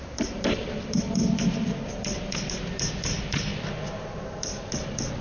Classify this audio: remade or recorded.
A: recorded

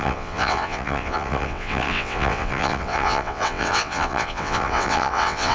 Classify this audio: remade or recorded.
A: remade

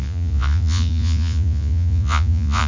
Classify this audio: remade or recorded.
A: remade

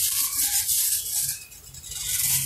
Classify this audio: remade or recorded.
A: recorded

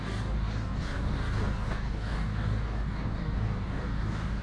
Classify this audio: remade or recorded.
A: remade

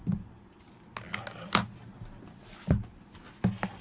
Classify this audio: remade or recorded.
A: recorded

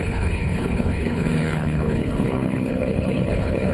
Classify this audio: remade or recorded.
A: remade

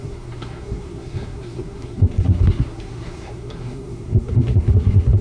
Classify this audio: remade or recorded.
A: remade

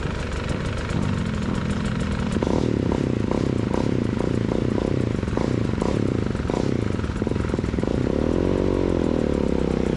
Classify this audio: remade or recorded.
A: recorded